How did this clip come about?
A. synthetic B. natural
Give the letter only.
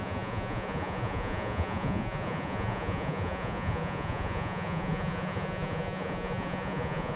A